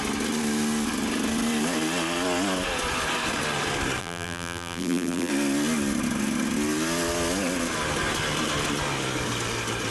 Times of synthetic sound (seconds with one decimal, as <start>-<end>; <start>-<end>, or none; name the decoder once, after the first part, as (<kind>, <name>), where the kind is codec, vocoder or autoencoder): 4.0-5.3 (vocoder, BigVGAN v2)